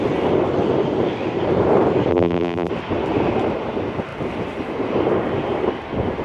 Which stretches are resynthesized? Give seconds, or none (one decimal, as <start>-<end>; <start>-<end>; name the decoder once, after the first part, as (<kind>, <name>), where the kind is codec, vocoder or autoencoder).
2.1-2.7 (vocoder, BigVGAN v2)